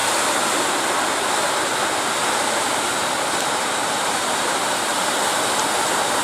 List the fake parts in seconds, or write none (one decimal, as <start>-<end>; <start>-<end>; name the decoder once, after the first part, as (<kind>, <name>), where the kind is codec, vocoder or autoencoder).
0.6-1.7 (vocoder, BigVGAN v2); 3.0-4.9; 5.6-6.2